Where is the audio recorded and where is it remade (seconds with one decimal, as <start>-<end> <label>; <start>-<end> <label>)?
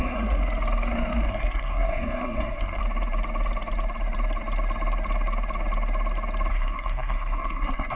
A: 0.0-0.4 remade; 0.4-1.3 recorded; 1.3-2.8 remade; 2.8-6.5 recorded; 6.5-8.0 remade